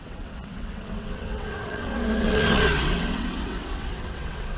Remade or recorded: remade